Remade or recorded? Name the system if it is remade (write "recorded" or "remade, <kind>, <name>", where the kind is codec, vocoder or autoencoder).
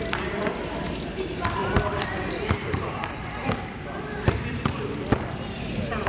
remade, vocoder, BigVGAN v2